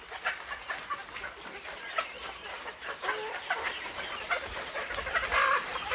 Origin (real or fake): real